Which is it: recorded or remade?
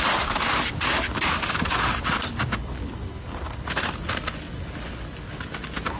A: recorded